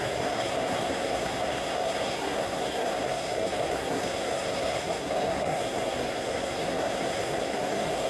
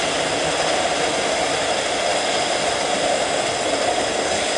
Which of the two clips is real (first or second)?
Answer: second